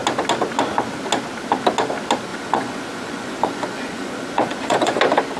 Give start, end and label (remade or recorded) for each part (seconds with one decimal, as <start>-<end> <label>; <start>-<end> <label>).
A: 0.0-2.3 recorded; 2.3-5.0 remade; 5.0-5.4 recorded